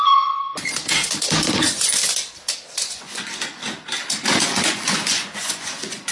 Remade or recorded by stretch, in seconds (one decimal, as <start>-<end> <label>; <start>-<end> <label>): 0.0-0.5 remade; 0.5-1.5 recorded; 1.5-2.0 remade; 2.0-2.8 recorded; 2.8-3.6 remade; 3.6-4.4 recorded; 4.4-6.1 remade